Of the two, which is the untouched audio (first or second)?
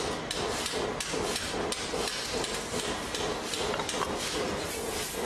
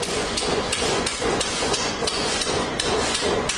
first